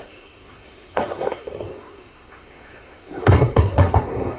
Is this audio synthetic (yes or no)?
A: yes